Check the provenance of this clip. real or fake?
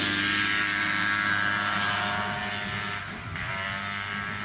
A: real